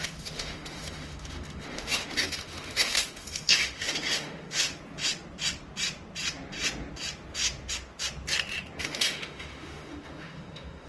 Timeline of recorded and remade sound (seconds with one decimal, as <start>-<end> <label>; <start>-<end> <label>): 0.0-4.7 remade; 4.7-8.8 recorded; 8.8-10.9 remade

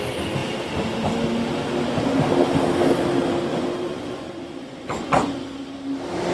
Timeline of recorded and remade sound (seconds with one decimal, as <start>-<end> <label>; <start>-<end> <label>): 0.0-3.5 recorded; 3.5-5.5 remade; 5.5-6.3 recorded

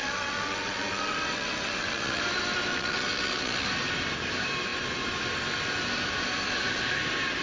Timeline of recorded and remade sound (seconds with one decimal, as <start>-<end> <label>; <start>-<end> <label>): 0.0-2.2 remade; 2.2-2.7 recorded; 2.7-3.7 remade; 3.7-7.4 recorded

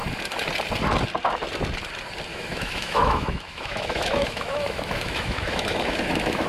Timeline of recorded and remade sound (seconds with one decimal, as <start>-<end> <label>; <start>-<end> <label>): 0.0-2.3 recorded; 2.3-6.5 remade

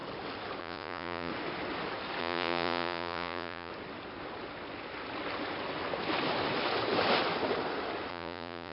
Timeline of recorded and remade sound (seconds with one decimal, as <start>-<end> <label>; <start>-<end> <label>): 0.0-0.6 recorded; 0.6-1.3 remade; 1.3-2.2 recorded; 2.2-3.7 remade; 3.7-8.1 recorded; 8.1-8.7 remade

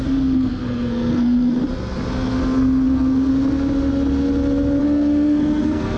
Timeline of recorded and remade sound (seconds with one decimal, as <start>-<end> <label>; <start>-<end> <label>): 0.0-1.6 remade; 1.6-2.4 recorded; 2.4-3.3 remade; 3.3-4.8 recorded; 4.8-6.0 remade

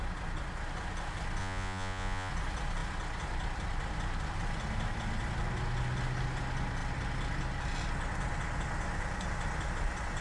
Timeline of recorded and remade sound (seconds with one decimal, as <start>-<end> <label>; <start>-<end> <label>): 0.0-1.4 recorded; 1.4-2.3 remade; 2.3-10.2 recorded

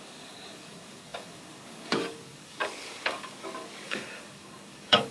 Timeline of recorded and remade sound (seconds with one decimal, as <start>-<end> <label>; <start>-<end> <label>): 0.0-5.1 remade